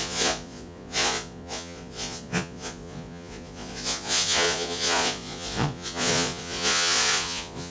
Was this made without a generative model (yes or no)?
no